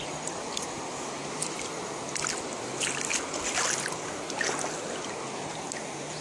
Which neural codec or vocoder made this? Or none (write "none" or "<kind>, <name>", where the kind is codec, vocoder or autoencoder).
none